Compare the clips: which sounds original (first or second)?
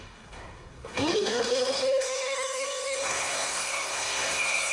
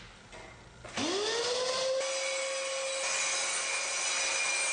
second